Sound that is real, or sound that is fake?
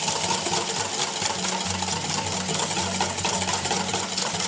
real